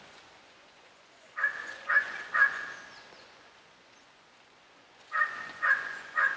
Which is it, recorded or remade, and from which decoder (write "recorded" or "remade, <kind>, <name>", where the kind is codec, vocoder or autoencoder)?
remade, vocoder, Vocos